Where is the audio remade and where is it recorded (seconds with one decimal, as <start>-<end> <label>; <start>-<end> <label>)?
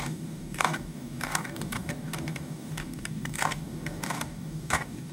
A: 0.0-5.1 remade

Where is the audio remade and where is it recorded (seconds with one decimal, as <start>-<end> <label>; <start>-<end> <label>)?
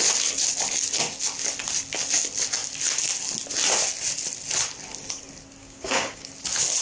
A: 0.0-5.6 recorded; 5.6-6.3 remade; 6.3-6.8 recorded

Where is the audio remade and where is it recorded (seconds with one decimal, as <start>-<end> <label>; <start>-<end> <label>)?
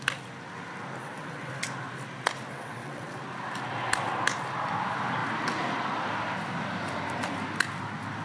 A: 0.0-1.0 recorded; 1.0-1.5 remade; 1.5-2.5 recorded; 2.5-3.2 remade; 3.2-8.2 recorded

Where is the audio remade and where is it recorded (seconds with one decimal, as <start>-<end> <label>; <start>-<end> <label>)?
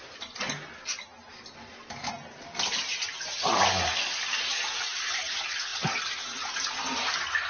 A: 0.0-7.5 recorded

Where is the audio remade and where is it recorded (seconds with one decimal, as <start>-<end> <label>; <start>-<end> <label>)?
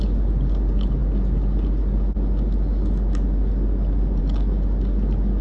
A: 0.0-5.4 recorded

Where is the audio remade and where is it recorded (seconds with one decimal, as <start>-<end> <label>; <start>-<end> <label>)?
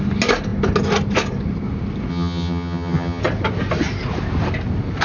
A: 0.0-2.1 recorded; 2.1-3.2 remade; 3.2-5.0 recorded